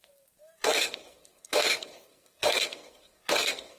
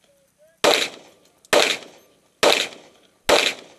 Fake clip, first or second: first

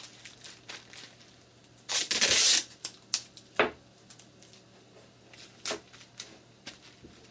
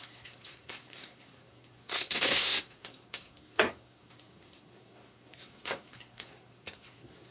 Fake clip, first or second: second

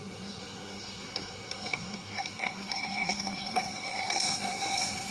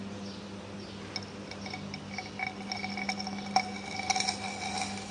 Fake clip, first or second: first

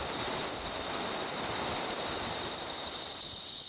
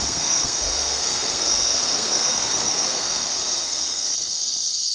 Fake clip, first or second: second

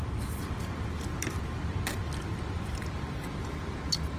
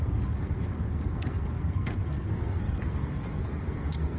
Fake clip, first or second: second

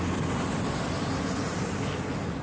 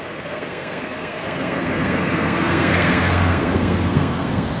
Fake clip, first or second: second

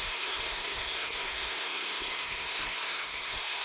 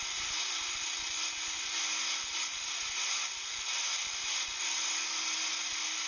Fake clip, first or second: first